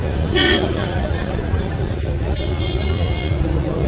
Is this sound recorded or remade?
remade